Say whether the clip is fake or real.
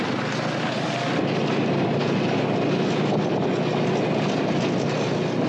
real